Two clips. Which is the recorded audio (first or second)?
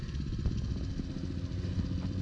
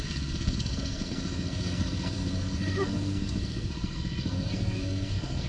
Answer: first